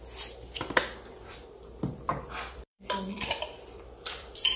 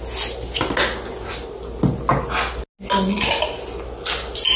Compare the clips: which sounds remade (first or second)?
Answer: first